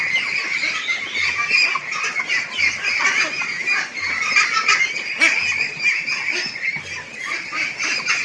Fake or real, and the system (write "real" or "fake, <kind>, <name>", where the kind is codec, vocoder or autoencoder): real